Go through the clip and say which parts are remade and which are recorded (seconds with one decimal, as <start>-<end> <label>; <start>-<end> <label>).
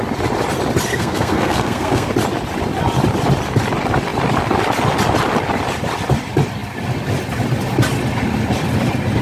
0.0-0.9 recorded; 0.9-2.1 remade; 2.1-9.2 recorded